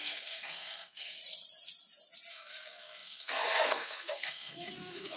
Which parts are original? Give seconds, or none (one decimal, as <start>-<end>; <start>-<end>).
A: 1.2-2.3